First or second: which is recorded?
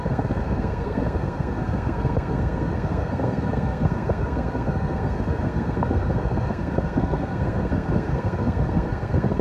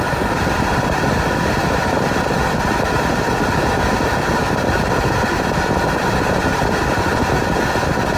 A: second